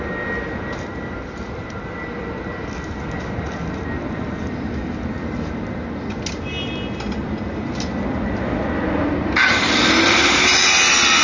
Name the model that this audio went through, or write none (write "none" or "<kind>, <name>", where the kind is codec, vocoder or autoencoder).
none